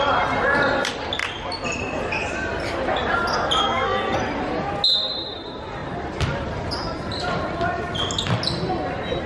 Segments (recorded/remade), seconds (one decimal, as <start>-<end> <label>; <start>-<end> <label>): 0.0-3.6 recorded; 3.6-4.2 remade; 4.2-9.3 recorded